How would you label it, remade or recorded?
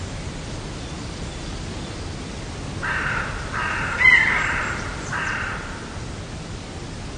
recorded